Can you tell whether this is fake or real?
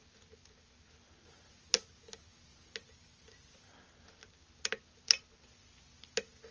real